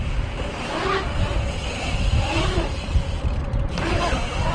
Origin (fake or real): real